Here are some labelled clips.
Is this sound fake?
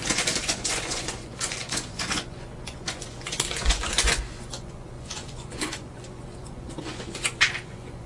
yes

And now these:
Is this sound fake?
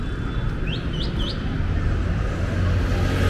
no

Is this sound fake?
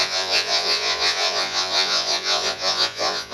yes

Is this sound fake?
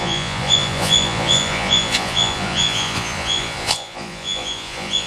yes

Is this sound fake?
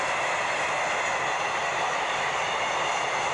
no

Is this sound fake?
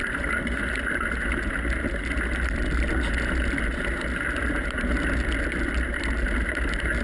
no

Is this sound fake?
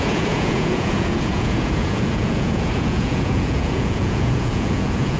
yes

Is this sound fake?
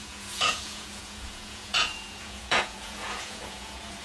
yes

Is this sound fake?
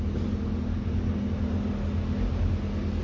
no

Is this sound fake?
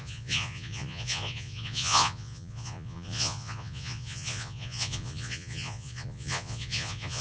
yes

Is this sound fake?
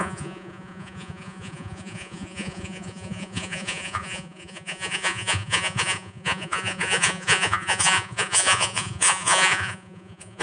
yes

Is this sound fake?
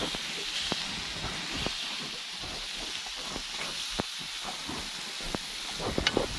no